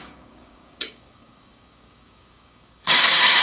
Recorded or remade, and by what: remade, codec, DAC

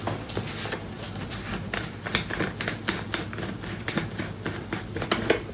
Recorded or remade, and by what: recorded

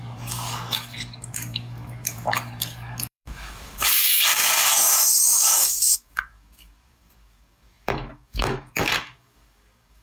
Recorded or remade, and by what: remade, codec, DAC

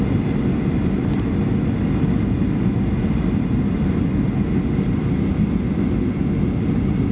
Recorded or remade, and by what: recorded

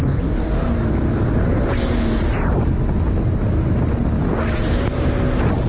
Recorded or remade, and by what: recorded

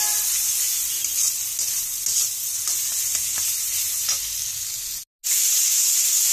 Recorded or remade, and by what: recorded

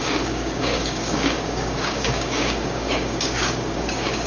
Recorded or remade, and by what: remade, codec, DAC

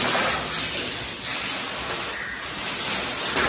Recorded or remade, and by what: recorded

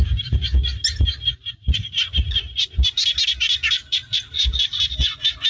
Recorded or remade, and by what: recorded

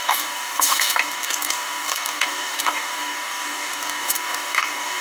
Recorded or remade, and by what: remade, codec, DAC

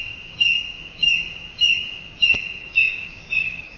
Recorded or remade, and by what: remade, codec, DAC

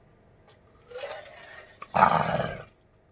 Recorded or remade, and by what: recorded